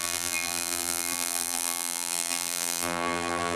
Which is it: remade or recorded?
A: remade